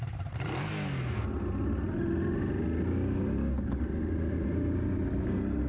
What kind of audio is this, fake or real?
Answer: real